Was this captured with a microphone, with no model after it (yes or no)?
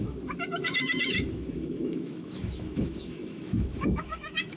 no